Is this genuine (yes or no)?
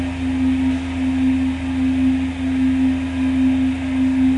yes